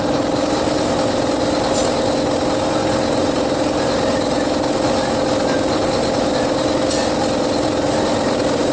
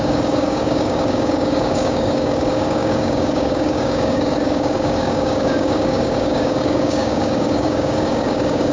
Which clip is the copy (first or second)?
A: second